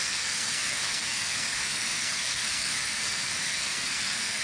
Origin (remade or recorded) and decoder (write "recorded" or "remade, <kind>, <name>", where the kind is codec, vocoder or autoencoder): remade, codec, SNAC